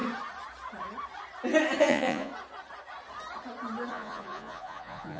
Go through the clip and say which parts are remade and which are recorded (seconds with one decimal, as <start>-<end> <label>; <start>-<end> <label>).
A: 0.0-1.8 recorded; 1.8-2.3 remade; 2.3-3.9 recorded; 3.9-5.2 remade